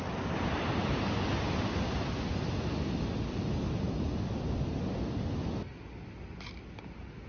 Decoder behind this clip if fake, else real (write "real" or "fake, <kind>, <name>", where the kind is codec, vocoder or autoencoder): real